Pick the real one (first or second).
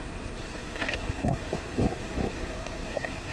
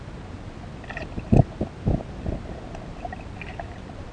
second